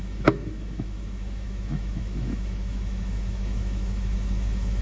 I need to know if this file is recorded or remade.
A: remade